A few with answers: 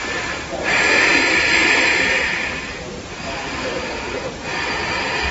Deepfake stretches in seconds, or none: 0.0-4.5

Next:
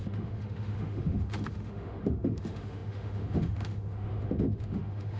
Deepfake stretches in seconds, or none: 0.0-5.2

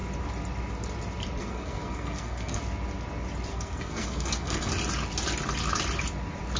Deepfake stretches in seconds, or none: 1.4-2.6; 3.5-4.7